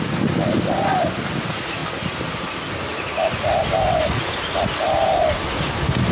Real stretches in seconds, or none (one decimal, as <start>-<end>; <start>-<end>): 0.0-6.1